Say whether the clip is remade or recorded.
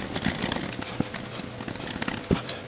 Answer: recorded